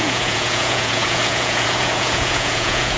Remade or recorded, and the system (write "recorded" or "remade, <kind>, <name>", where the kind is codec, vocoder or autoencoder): remade, vocoder, Vocos